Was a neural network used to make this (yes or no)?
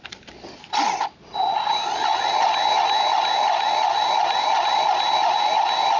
no